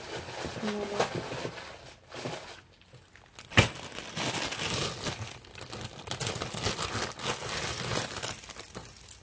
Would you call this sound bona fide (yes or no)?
yes